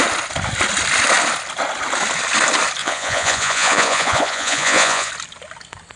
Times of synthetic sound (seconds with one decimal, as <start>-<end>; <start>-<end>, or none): 2.8-5.1